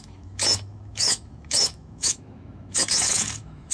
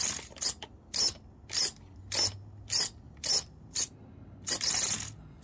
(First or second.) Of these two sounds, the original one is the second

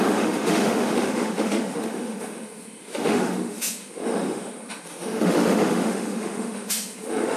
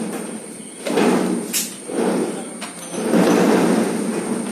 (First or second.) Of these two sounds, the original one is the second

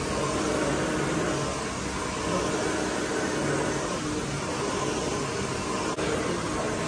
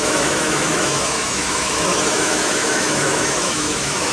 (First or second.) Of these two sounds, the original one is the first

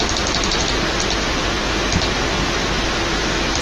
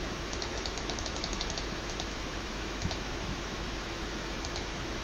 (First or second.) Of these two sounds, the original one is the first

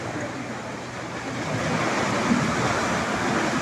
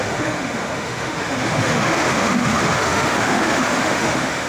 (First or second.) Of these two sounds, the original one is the first